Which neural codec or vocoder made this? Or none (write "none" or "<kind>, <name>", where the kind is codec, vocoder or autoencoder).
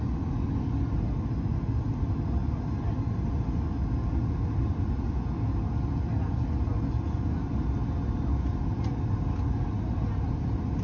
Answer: none